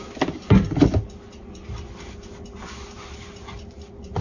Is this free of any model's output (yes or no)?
yes